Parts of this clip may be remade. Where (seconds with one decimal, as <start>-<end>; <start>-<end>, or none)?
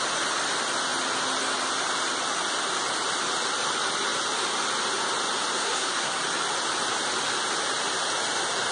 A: 5.6-6.2